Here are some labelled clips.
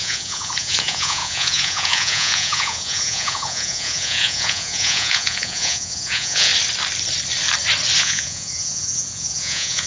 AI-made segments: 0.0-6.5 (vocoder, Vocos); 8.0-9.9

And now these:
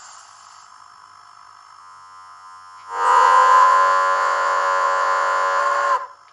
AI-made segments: 1.8-5.6 (vocoder, Vocos)

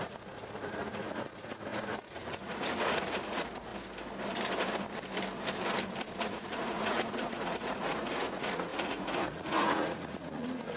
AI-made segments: 0.0-3.7 (vocoder, Vocos); 6.2-10.8